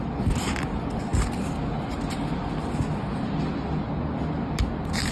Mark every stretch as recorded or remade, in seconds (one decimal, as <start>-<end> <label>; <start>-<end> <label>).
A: 0.0-5.1 recorded